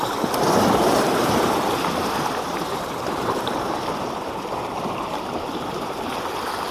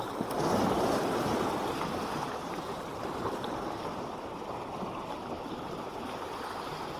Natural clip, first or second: second